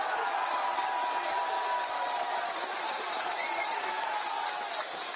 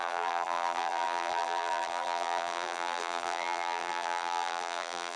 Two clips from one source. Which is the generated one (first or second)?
second